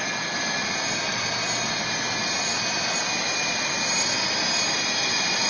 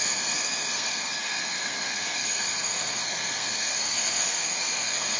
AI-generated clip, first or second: second